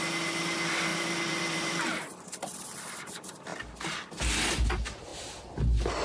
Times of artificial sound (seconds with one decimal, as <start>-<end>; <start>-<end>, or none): 0.9-2.0